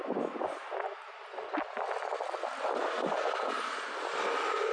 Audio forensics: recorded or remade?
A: recorded